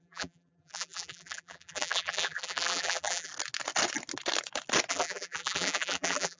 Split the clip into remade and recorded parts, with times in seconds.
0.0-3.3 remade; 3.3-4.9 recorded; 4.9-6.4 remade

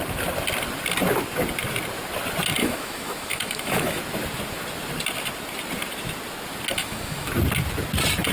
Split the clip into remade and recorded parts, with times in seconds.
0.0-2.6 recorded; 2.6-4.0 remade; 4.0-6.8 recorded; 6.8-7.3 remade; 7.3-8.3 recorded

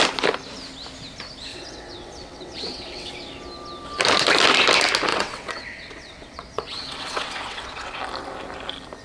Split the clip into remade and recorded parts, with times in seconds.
0.0-1.5 recorded; 1.5-3.1 remade; 3.1-5.1 recorded; 5.1-8.0 remade; 8.0-9.0 recorded